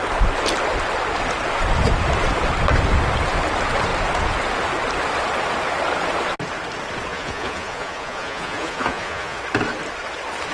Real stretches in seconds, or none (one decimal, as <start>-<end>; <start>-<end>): 0.0-7.1; 9.4-10.5